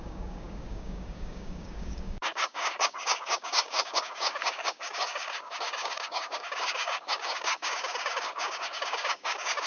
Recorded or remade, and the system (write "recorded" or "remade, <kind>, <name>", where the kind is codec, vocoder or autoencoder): remade, codec, DAC